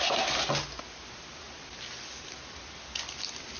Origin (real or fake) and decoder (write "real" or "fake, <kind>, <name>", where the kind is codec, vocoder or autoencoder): real